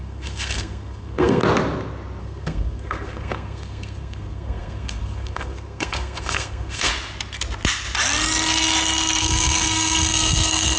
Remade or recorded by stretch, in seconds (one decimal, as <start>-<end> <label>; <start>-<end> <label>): 0.0-1.4 remade; 1.4-2.2 recorded; 2.2-6.9 remade; 6.9-9.2 recorded; 9.2-10.8 remade